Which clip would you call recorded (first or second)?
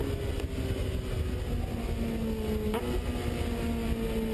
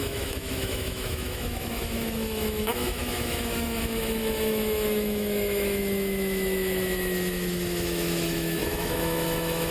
first